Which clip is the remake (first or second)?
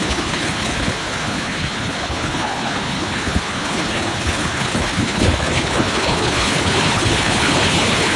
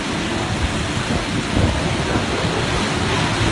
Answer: first